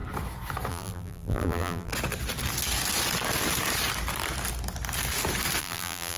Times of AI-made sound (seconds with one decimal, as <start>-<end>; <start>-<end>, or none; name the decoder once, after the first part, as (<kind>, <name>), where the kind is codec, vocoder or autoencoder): 0.7-1.9 (vocoder, BigVGAN v2); 5.6-6.2

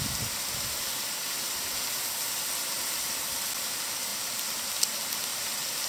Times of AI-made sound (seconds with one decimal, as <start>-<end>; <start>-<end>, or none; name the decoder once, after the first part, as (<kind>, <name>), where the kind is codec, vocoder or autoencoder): 4.1-4.7 (vocoder, BigVGAN v2)

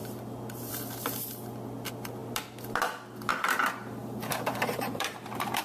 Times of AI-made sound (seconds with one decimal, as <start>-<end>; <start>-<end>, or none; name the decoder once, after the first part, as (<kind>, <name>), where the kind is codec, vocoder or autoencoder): 4.0-5.6 (vocoder, BigVGAN v2)

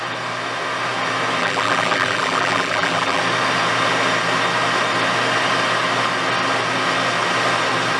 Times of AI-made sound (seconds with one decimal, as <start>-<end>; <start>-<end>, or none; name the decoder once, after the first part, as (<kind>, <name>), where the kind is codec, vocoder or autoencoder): 1.4-3.2 (vocoder, BigVGAN v2)